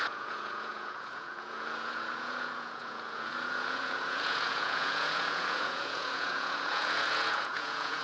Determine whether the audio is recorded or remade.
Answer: remade